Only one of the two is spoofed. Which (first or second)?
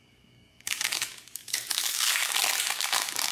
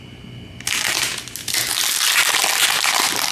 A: first